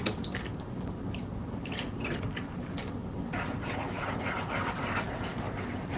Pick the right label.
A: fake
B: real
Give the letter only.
B